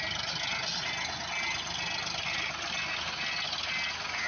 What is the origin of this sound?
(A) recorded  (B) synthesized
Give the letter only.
A